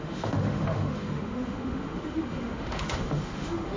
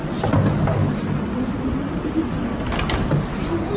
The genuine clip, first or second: second